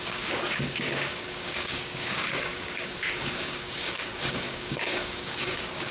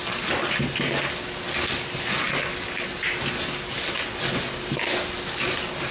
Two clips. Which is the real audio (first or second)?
second